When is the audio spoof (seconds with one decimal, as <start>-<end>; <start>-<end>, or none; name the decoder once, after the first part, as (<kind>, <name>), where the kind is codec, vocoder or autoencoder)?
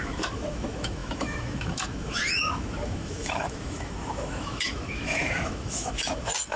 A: 0.0-6.6 (autoencoder, DAC-VAE)